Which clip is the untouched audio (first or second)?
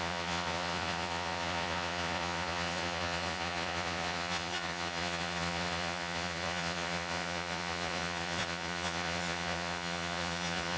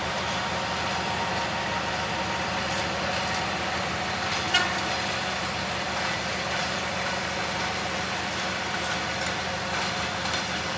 second